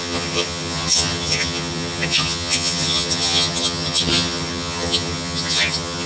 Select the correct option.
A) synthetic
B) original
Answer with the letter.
A